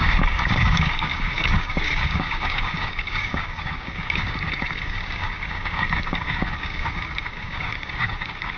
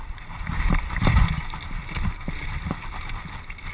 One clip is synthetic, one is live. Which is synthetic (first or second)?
first